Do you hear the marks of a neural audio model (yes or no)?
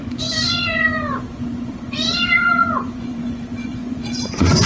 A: yes